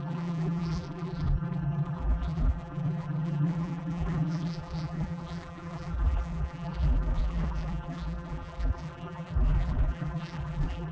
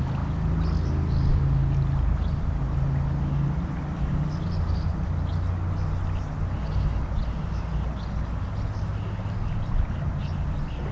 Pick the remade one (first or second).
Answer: first